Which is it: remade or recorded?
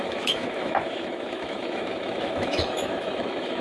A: remade